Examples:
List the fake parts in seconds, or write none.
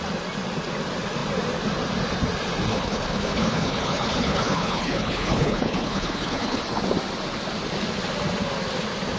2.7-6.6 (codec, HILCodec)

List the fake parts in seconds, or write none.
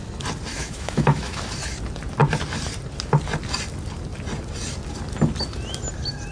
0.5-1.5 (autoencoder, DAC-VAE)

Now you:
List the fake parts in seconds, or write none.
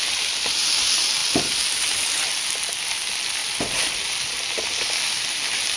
none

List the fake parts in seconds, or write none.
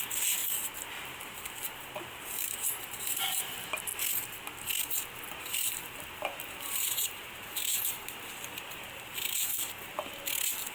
0.0-0.4 (vocoder, BigVGAN v2); 0.9-3.9; 5.4-7.8; 8.3-9.5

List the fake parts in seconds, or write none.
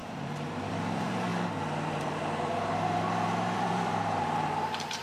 0.0-5.0 (vocoder, BigVGAN v2)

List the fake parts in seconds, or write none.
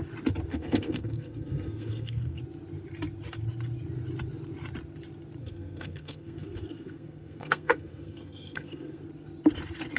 0.5-2.4 (codec, SNAC); 5.4-9.0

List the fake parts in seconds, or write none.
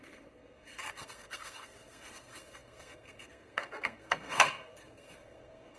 0.0-5.8 (codec, SNAC)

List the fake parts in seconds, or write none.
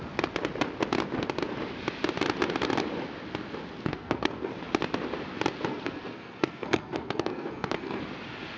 3.9-4.5 (codec, SNAC); 5.7-8.0